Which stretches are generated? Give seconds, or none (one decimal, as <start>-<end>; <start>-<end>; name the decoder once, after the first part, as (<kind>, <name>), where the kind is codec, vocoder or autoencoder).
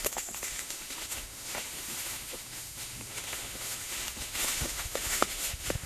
0.0-5.9 (autoencoder, DAC-VAE)